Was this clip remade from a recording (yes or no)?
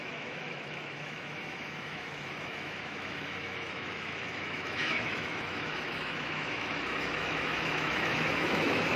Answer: yes